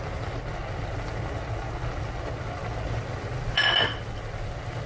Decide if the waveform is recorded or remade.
recorded